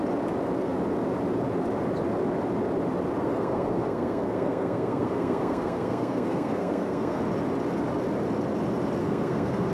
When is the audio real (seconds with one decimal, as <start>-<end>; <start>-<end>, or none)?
0.0-3.2; 7.2-9.0